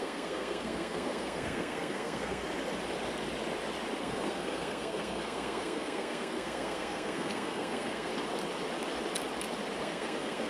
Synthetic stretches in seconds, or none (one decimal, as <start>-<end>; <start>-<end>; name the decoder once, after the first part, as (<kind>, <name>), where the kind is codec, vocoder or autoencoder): 0.0-2.4 (codec, SNAC); 4.0-8.1; 9.8-10.5